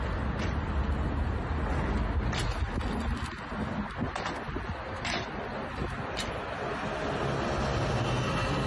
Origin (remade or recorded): recorded